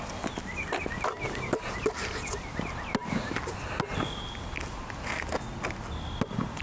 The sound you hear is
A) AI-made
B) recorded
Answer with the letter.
B